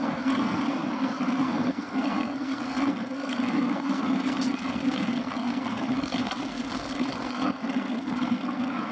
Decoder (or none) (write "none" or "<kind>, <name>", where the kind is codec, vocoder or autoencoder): codec, SNAC